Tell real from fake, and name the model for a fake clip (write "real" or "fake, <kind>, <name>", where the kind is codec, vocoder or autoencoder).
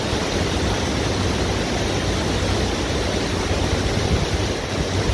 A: real